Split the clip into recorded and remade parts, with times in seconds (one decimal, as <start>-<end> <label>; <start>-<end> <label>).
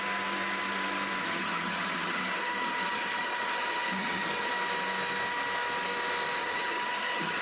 0.0-1.2 recorded; 1.2-4.5 remade; 4.5-6.4 recorded; 6.4-7.4 remade